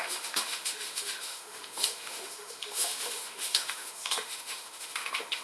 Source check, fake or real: fake